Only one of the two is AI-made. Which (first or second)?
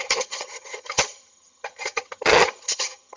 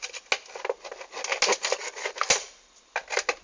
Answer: first